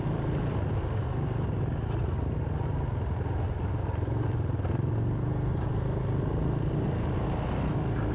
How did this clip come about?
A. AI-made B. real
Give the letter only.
B